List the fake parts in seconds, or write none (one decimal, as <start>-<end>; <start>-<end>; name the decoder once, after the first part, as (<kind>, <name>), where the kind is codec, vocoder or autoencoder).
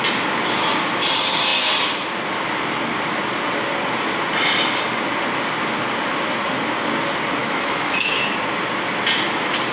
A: 7.4-8.1 (autoencoder, DAC-VAE)